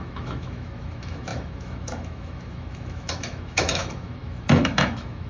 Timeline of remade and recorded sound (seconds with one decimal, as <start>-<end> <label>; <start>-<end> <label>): 0.0-5.3 remade